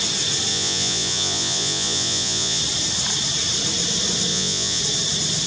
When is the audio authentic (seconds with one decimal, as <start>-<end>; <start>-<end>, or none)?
0.0-0.5; 2.6-4.3; 4.8-5.5

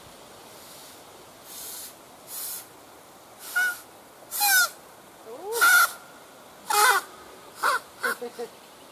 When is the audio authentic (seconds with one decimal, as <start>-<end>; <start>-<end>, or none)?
0.0-8.9

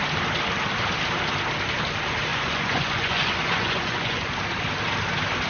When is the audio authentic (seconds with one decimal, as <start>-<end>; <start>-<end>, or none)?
0.0-2.3; 4.3-5.5

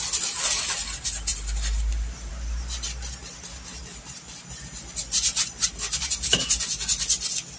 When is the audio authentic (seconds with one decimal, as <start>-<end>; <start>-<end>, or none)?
0.0-7.6